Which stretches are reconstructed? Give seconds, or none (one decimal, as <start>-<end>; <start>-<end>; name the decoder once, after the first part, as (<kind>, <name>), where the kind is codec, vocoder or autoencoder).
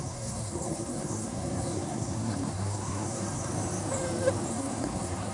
0.0-3.5 (codec, SNAC); 4.5-5.3